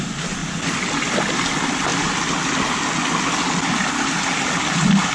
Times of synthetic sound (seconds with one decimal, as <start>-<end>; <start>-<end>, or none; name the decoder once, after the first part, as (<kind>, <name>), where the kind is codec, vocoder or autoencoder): none